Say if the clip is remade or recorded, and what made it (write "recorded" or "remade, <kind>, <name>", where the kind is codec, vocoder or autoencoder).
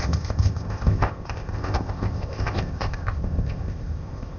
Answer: remade, codec, ZipCodec